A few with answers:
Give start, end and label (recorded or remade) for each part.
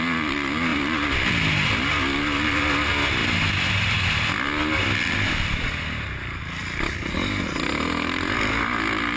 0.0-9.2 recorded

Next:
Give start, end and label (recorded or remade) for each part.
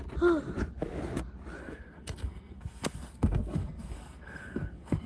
0.0-1.6 recorded; 1.6-5.1 remade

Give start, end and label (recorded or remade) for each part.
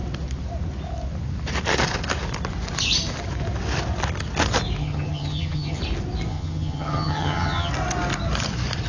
0.0-4.8 recorded; 4.8-5.8 remade; 5.8-6.3 recorded; 6.3-7.7 remade; 7.7-8.9 recorded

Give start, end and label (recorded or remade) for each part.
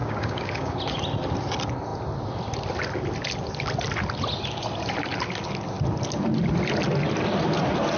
0.0-0.8 remade; 0.8-8.0 recorded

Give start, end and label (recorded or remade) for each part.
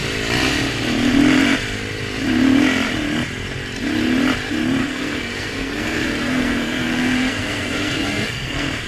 0.0-4.8 recorded; 4.8-8.9 remade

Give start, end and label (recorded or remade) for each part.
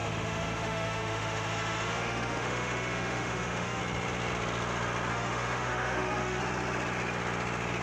0.0-3.8 remade; 3.8-5.1 recorded; 5.1-6.4 remade; 6.4-7.8 recorded